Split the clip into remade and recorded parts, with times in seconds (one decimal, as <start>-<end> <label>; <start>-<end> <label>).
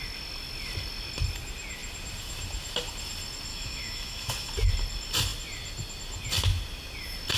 0.0-3.5 recorded; 3.5-4.5 remade; 4.5-7.4 recorded